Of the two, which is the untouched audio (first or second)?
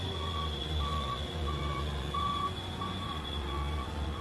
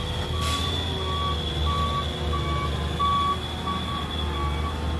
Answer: second